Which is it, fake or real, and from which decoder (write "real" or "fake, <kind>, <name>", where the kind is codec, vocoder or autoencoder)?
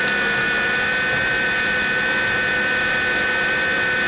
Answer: real